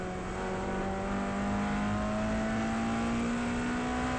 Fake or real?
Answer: real